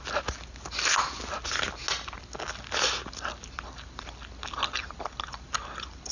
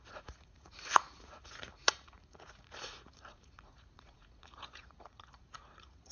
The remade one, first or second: second